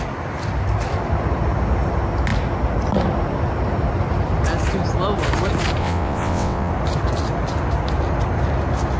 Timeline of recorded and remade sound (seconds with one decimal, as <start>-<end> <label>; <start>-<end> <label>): 0.0-5.8 recorded; 5.8-6.7 remade; 6.7-9.0 recorded